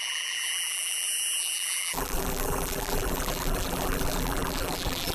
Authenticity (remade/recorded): remade